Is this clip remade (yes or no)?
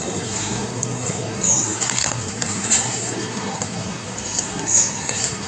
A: yes